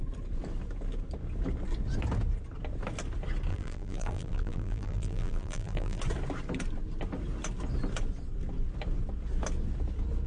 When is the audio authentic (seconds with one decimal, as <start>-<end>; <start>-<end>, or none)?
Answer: 0.0-3.5; 6.0-10.3